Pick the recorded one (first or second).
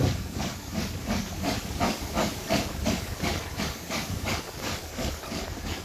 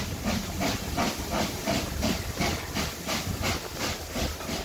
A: second